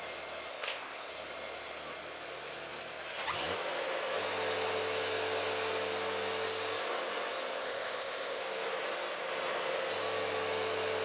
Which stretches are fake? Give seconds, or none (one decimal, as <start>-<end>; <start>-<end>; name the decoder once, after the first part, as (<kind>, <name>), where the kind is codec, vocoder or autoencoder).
0.5-1.1 (codec, ZipCodec); 7.6-8.4